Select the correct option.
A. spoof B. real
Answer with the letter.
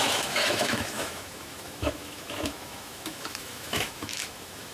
A